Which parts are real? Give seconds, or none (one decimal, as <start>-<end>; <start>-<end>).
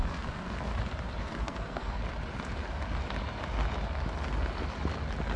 0.7-1.2; 2.0-5.4